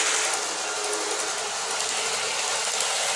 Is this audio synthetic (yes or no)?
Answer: no